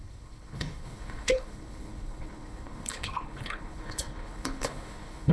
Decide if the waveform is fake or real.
fake